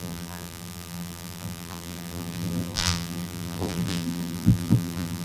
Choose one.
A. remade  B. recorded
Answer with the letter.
A